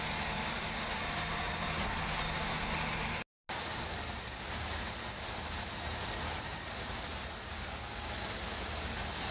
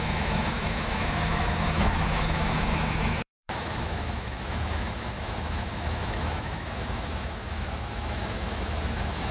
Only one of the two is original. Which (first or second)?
first